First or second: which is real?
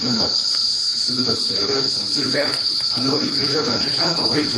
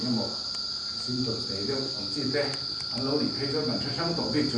second